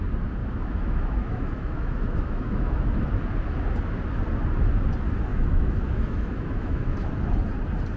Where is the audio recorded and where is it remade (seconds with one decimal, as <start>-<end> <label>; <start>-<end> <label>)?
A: 0.0-0.4 recorded; 0.4-3.2 remade; 3.2-5.3 recorded; 5.3-7.1 remade; 7.1-8.0 recorded